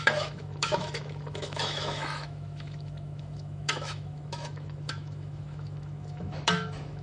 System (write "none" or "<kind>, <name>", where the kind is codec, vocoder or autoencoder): autoencoder, DAC-VAE